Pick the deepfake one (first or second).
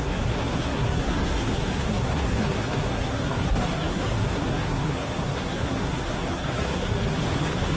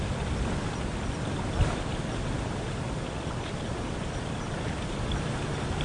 first